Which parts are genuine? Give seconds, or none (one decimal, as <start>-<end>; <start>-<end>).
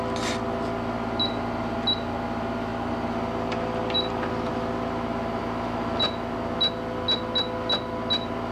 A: 0.0-8.5